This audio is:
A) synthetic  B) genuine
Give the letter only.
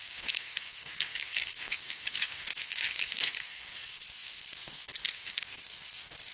A